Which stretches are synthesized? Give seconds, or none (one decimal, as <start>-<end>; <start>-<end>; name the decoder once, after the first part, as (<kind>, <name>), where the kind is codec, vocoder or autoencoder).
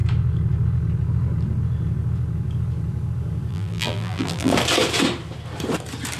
3.5-4.5 (vocoder, BigVGAN v2)